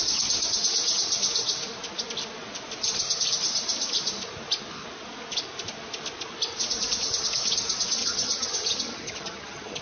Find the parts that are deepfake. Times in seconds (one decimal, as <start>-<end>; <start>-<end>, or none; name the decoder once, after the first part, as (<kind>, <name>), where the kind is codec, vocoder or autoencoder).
8.0-9.8 (vocoder, HiFi-GAN)